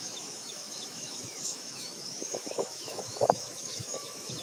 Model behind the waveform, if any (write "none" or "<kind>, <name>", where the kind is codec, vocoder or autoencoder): autoencoder, DAC-VAE